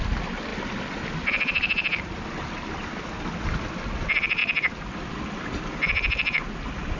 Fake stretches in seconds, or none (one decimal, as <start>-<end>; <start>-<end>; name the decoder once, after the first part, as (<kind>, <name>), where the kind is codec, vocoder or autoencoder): none